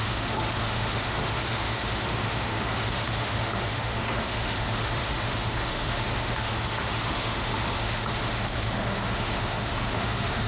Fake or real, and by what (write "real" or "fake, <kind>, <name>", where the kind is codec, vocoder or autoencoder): fake, autoencoder, DAC-VAE